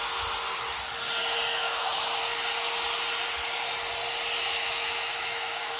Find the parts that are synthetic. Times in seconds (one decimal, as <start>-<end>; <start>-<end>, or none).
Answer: 1.6-2.2; 4.5-5.8